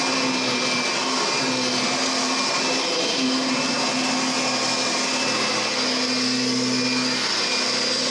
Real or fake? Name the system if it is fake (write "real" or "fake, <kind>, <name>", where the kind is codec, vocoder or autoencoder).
real